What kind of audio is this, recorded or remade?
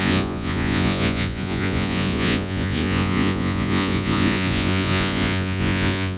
remade